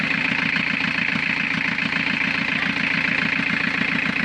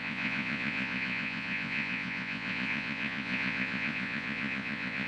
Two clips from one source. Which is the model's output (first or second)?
second